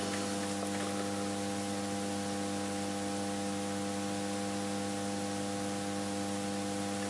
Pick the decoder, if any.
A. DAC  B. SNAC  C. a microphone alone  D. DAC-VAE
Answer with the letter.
C